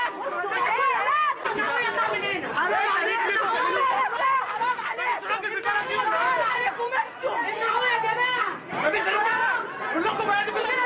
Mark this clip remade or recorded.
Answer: recorded